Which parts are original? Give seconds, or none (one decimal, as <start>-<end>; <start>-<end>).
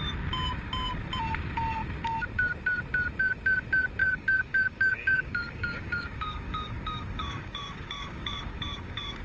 0.0-4.0